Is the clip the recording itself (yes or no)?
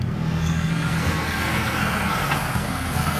no